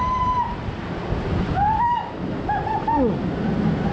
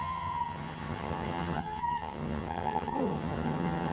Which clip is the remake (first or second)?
second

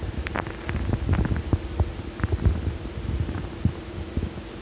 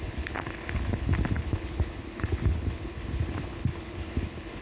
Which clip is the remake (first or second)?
second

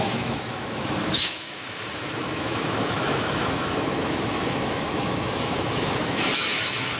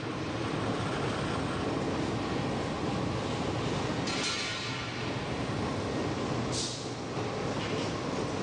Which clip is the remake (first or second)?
first